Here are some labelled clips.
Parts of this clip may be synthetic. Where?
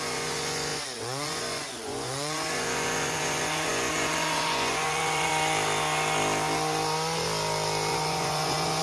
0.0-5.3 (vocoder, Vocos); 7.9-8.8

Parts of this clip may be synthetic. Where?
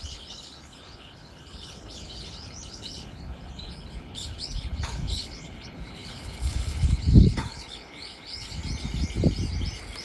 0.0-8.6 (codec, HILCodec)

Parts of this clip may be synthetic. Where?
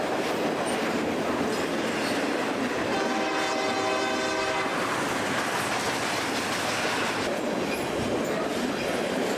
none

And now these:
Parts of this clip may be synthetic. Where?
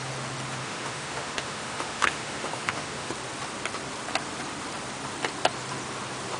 0.6-3.1 (autoencoder, DAC-VAE)